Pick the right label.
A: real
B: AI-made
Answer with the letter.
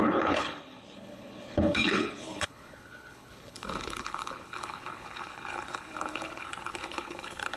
B